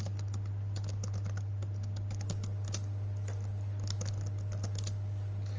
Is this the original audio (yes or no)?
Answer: yes